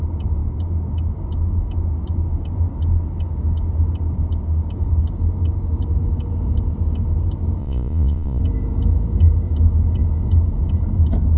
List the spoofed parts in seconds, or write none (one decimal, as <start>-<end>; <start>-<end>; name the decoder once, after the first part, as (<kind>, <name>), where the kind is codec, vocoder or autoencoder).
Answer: 7.6-8.4 (vocoder, Vocos)